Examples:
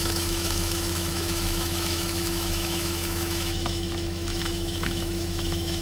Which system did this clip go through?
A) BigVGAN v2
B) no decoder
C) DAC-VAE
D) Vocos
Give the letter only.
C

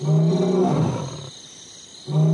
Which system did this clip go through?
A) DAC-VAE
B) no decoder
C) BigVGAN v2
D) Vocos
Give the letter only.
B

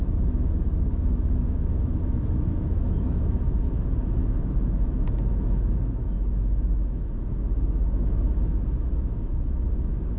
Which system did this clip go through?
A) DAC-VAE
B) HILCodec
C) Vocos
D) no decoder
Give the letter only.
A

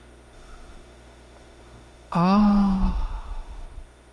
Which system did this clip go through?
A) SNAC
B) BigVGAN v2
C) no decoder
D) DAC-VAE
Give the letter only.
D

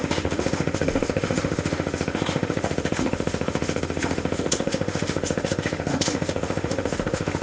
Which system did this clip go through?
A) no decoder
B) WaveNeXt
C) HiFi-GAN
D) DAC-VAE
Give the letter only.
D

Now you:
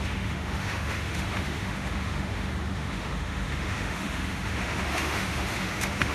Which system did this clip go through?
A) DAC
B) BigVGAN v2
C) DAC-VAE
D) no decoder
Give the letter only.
C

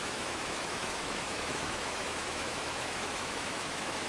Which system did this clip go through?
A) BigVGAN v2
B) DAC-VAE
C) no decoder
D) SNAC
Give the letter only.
B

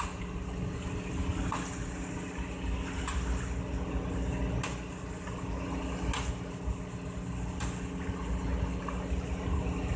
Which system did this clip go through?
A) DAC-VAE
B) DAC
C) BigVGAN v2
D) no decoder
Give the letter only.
D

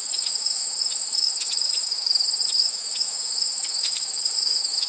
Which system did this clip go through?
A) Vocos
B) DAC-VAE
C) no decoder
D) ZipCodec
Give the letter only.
B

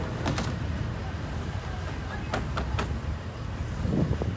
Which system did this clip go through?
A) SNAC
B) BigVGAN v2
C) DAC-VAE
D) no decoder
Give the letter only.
D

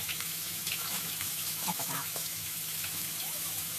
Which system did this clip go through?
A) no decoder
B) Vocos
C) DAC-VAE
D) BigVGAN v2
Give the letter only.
C